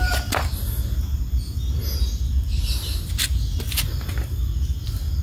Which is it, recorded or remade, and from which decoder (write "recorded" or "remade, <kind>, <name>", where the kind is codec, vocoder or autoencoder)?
recorded